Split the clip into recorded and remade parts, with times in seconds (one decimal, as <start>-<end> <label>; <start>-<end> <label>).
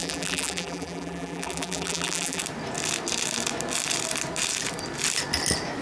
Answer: 0.0-2.4 remade; 2.4-5.8 recorded